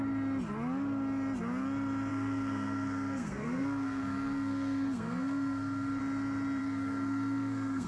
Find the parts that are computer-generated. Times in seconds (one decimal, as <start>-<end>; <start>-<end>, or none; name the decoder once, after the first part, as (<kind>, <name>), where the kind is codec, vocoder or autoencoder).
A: 2.1-6.0 (codec, SNAC); 6.6-7.9